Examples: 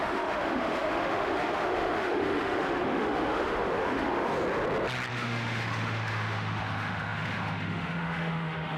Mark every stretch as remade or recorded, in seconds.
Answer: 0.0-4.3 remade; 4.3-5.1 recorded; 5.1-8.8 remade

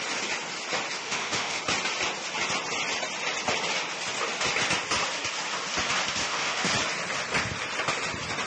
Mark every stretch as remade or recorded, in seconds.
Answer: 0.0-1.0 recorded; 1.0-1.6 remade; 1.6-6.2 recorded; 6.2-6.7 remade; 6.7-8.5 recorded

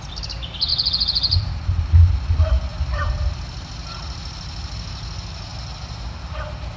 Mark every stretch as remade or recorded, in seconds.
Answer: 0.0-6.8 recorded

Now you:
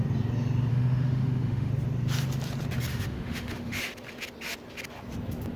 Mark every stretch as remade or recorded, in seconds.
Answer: 0.0-0.7 recorded; 0.7-1.7 remade; 1.7-2.9 recorded; 2.9-3.8 remade; 3.8-5.6 recorded

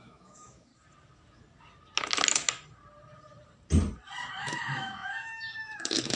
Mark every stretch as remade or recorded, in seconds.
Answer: 0.0-0.7 remade; 0.7-4.4 recorded; 4.4-6.1 remade

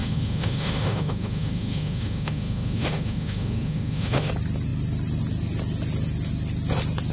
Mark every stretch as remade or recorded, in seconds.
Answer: 0.0-4.3 remade; 4.3-7.1 recorded